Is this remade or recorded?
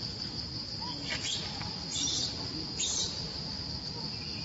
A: recorded